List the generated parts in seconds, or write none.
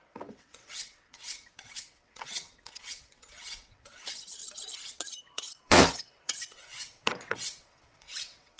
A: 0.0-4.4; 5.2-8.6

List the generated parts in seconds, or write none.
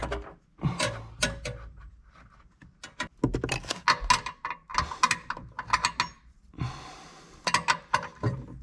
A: none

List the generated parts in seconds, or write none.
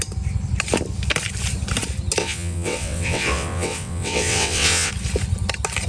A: 2.2-4.9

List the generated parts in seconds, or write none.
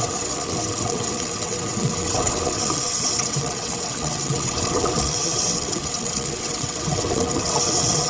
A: 0.0-8.1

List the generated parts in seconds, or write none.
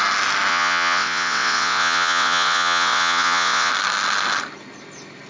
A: 0.5-3.7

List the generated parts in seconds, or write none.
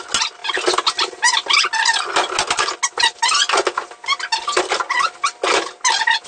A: none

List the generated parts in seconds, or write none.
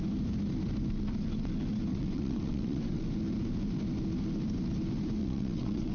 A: 1.9-3.0; 5.2-5.9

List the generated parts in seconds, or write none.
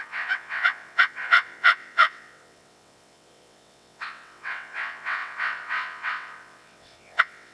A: 0.0-7.5